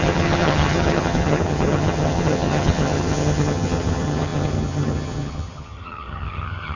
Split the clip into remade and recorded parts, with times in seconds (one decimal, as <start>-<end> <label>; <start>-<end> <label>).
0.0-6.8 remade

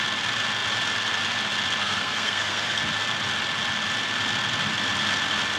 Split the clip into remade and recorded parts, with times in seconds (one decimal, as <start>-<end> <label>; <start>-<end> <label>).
0.0-1.8 recorded; 1.8-2.8 remade; 2.8-5.6 recorded

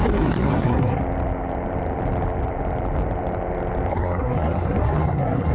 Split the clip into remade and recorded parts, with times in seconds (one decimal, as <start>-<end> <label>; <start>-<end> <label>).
0.0-1.0 remade; 1.0-3.9 recorded; 3.9-5.5 remade

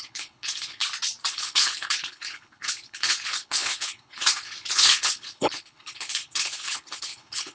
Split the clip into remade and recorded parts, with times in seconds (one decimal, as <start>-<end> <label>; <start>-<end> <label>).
0.0-0.8 remade; 0.8-1.3 recorded; 1.3-7.5 remade